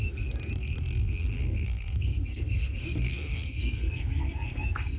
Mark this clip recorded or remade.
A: remade